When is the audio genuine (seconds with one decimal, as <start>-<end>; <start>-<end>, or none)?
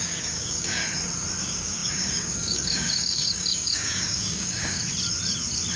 0.8-1.4; 4.8-5.8